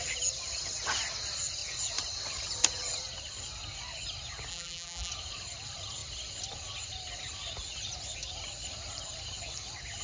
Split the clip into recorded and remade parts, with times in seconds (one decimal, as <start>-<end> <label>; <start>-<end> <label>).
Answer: 0.0-4.5 recorded; 4.5-5.1 remade; 5.1-10.0 recorded